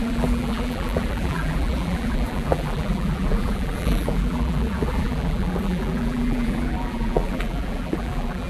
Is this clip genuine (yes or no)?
no